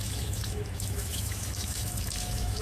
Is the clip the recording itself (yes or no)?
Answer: no